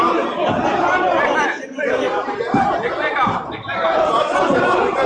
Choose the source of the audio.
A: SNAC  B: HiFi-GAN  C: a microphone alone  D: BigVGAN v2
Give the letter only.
D